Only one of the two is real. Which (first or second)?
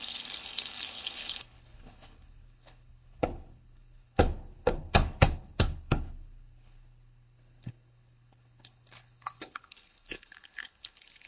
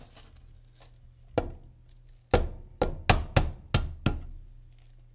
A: second